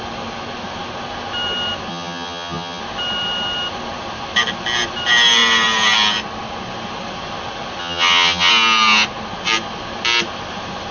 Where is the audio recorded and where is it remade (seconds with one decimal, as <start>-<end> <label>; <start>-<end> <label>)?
0.0-1.9 recorded; 1.9-2.8 remade; 2.8-7.8 recorded; 7.8-8.5 remade; 8.5-10.9 recorded